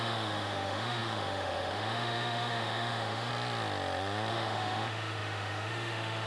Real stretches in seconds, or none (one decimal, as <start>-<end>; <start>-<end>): 3.3-4.3